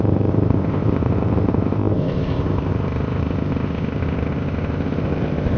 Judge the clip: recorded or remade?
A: remade